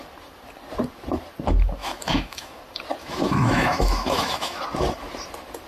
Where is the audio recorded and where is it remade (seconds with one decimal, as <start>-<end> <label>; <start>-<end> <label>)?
0.0-1.8 recorded; 1.8-2.6 remade; 2.6-3.0 recorded; 3.0-4.6 remade; 4.6-5.7 recorded